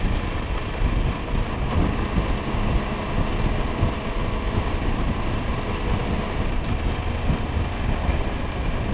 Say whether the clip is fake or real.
real